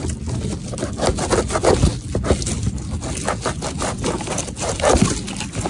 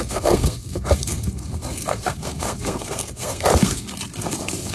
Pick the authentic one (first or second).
first